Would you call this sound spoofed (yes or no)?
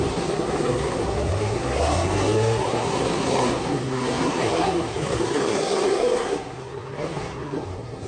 yes